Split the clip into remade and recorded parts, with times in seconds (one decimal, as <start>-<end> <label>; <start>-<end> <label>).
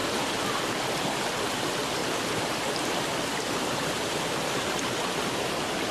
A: 0.0-0.6 remade; 0.6-2.0 recorded; 2.0-5.5 remade; 5.5-5.9 recorded